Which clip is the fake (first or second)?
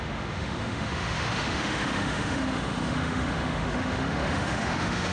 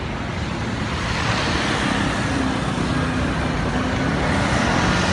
first